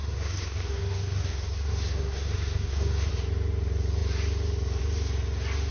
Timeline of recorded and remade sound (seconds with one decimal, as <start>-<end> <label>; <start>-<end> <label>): 0.0-3.1 remade; 3.1-5.7 recorded